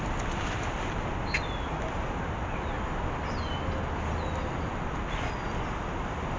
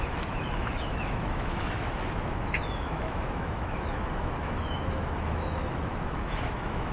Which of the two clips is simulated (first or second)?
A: second